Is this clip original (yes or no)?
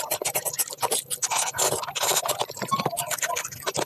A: yes